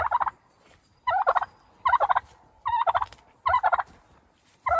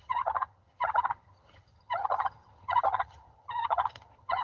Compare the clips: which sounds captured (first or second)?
first